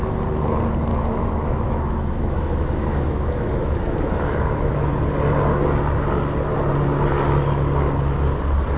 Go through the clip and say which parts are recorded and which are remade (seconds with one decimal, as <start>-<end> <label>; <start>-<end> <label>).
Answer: 0.0-0.9 recorded; 0.9-4.9 remade; 4.9-8.8 recorded